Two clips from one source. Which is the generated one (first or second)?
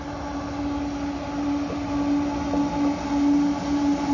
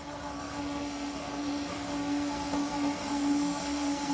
second